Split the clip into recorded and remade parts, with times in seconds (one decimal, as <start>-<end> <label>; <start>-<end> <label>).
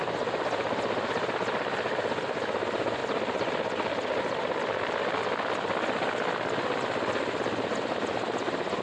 0.0-8.8 recorded